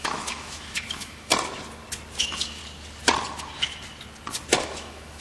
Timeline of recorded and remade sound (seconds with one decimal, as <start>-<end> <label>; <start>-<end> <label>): 0.0-1.3 remade; 1.3-2.2 recorded; 2.2-2.6 remade; 2.6-4.6 recorded; 4.6-5.2 remade